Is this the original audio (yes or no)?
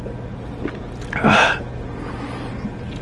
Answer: yes